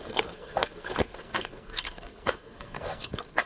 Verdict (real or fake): fake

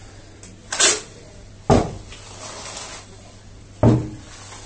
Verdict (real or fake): real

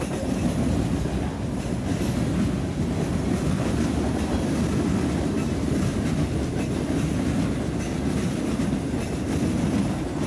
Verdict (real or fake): real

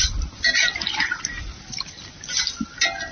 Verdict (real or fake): real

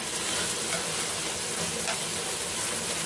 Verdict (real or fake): real